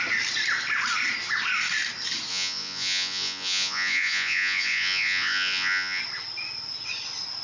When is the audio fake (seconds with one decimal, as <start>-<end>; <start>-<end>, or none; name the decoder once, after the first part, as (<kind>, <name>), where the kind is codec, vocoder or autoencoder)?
2.3-6.0 (vocoder, Vocos)